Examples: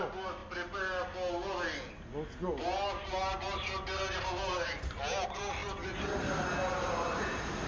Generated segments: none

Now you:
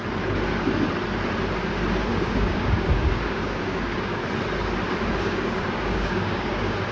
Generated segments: 2.1-4.2 (codec, DAC); 5.2-6.9

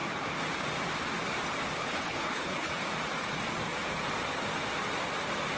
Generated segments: 1.8-2.7 (codec, HILCodec)